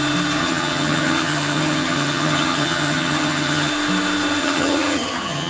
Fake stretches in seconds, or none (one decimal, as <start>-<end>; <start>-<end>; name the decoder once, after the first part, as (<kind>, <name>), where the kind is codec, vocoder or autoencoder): 0.4-3.7 (vocoder, HiFi-GAN); 4.4-5.5